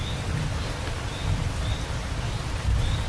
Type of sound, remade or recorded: recorded